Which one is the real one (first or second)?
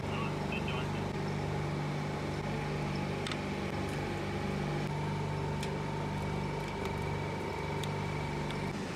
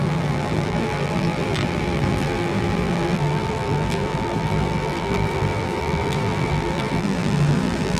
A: first